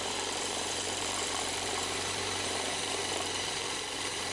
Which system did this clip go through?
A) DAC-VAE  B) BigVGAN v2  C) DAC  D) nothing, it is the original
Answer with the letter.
B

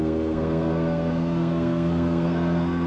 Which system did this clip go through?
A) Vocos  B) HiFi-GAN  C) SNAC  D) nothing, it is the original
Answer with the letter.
C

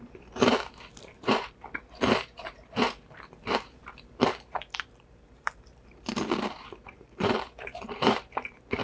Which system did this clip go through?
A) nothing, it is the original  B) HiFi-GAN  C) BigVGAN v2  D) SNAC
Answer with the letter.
C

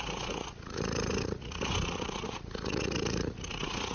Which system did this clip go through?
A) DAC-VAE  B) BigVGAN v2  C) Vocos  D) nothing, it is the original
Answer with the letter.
C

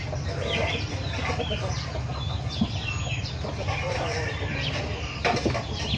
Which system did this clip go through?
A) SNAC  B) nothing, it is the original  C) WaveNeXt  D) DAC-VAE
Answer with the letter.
B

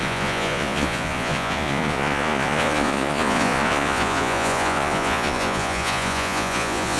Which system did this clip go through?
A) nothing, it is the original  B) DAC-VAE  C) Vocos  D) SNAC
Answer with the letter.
C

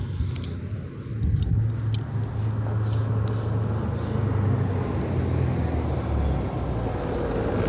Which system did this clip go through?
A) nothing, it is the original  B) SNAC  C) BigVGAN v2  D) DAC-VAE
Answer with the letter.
A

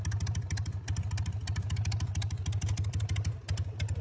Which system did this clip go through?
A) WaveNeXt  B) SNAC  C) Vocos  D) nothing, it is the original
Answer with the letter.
D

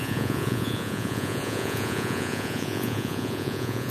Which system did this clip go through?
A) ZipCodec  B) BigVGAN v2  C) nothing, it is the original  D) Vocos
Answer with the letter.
D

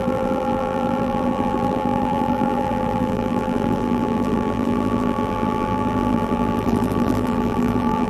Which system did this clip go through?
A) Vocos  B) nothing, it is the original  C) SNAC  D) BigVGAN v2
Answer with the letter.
D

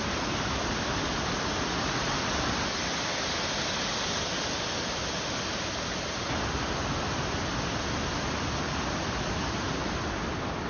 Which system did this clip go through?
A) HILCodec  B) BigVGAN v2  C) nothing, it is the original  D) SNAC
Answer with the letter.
C